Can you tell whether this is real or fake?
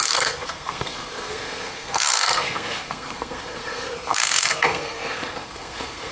fake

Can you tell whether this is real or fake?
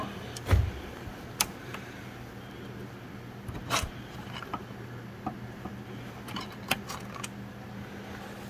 real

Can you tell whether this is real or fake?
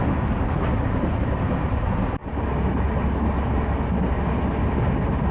real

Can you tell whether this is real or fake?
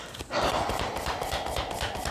real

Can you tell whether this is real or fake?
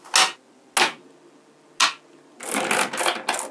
real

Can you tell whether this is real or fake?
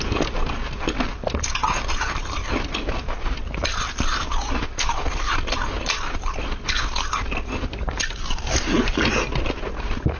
real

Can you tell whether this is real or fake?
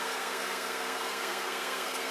fake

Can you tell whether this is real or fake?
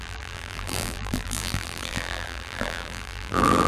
fake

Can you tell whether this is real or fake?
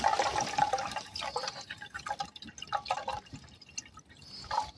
real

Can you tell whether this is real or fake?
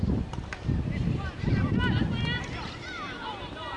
fake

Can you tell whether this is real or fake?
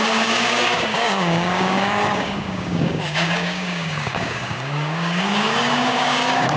fake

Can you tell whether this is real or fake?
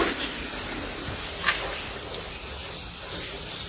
real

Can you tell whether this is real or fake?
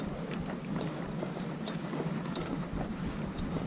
real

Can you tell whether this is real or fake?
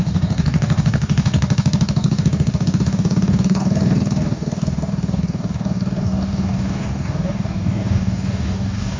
fake